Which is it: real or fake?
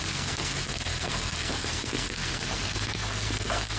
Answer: fake